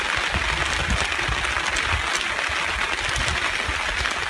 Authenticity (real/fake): real